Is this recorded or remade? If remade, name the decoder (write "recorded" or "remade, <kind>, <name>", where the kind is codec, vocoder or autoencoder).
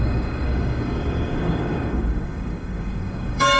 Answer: remade, codec, DAC